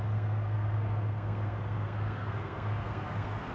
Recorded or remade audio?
remade